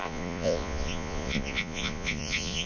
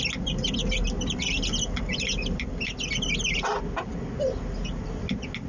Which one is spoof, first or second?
first